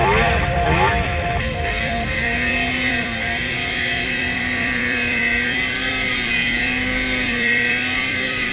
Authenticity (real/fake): fake